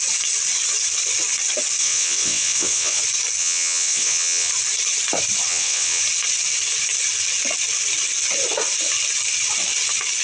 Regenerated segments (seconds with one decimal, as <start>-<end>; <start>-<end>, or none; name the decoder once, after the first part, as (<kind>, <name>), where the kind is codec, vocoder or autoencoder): 1.8-3.0 (vocoder, WaveNeXt); 3.4-4.5; 5.5-6.0